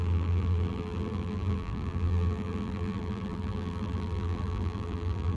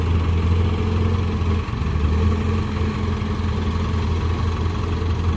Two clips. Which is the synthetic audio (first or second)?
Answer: first